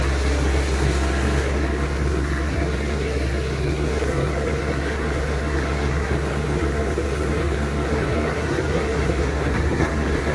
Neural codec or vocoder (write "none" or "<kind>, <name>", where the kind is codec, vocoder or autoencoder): codec, SNAC